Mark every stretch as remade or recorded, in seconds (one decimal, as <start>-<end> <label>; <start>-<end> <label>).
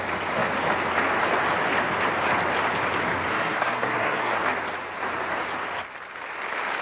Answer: 0.0-3.3 recorded; 3.3-4.4 remade; 4.4-6.8 recorded